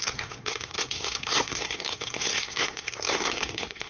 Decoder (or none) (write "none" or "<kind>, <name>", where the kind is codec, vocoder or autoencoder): codec, SNAC